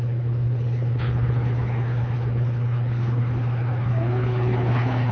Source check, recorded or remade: remade